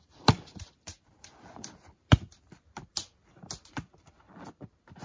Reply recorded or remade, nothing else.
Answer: remade